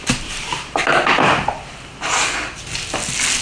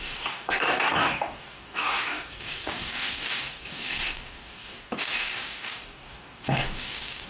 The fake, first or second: second